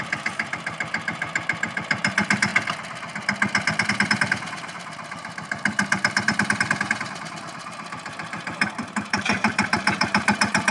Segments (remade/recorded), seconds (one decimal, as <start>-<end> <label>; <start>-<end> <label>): 0.0-2.5 remade; 2.5-3.9 recorded; 3.9-10.7 remade